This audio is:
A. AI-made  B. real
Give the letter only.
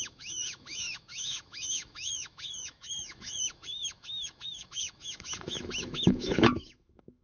A